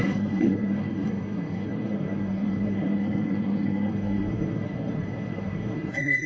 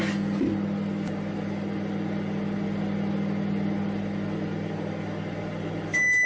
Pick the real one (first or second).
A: second